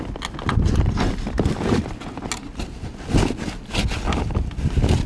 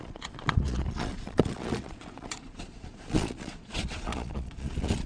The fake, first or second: second